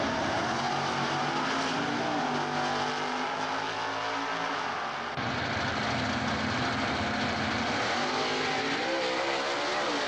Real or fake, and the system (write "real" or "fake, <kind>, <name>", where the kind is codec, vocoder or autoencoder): real